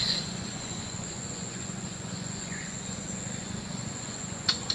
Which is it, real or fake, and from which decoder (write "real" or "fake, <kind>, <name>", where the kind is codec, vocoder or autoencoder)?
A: fake, vocoder, Vocos